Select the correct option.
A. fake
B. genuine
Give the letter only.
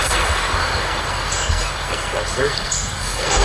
A